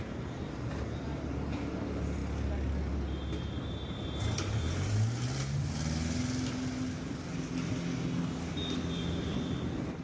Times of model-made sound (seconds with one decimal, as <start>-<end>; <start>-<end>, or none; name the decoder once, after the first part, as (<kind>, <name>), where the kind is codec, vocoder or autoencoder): none